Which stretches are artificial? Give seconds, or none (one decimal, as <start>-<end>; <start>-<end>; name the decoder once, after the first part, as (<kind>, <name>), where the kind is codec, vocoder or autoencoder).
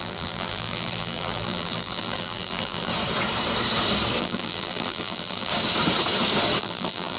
0.0-2.9 (vocoder, BigVGAN v2); 4.2-5.5; 6.6-7.2